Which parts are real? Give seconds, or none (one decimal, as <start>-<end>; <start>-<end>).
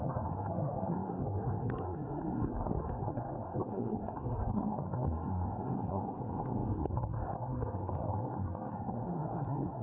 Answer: none